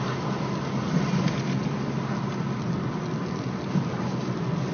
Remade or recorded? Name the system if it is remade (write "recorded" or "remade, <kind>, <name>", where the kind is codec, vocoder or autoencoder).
recorded